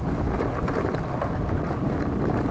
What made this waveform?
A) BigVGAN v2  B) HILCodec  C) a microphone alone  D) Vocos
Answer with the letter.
A